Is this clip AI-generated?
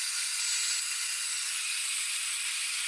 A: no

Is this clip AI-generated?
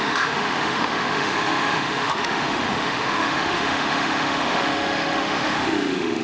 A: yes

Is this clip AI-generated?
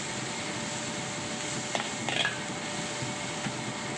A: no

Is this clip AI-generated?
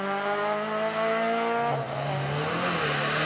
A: no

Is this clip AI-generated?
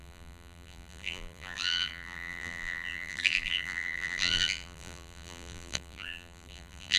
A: yes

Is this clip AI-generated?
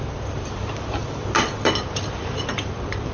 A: yes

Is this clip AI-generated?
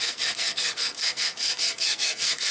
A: yes